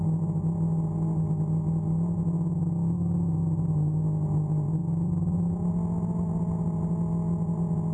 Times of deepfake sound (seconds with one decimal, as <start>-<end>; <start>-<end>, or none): none